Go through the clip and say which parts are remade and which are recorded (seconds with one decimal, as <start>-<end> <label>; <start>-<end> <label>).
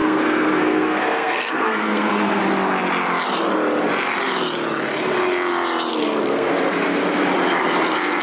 0.0-2.4 remade; 2.4-5.9 recorded; 5.9-6.5 remade; 6.5-8.2 recorded